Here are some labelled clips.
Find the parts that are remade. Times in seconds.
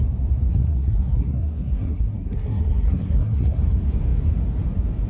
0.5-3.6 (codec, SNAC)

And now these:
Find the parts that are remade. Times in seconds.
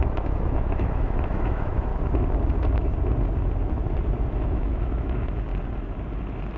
0.0-1.9 (autoencoder, DAC-VAE); 4.3-5.5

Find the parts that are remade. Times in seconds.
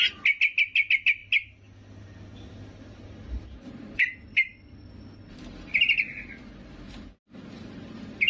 none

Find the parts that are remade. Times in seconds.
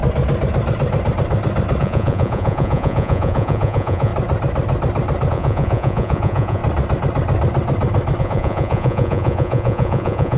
1.8-4.1 (vocoder, Vocos); 5.3-6.6; 8.2-10.4